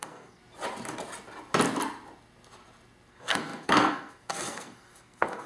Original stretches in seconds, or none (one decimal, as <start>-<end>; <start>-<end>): 0.4-3.1